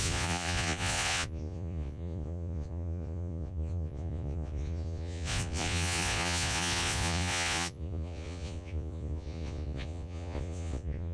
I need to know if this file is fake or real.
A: fake